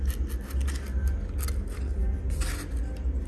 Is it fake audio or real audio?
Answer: real